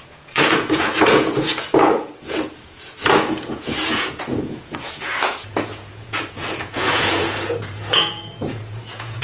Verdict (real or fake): fake